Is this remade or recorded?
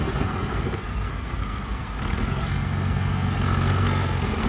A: remade